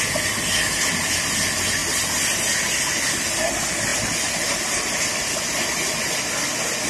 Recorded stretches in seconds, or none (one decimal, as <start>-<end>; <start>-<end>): 0.0-6.9